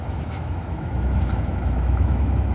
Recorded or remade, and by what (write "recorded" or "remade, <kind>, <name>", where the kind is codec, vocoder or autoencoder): remade, autoencoder, DAC-VAE